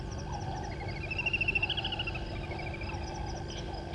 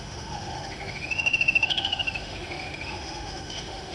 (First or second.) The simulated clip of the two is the second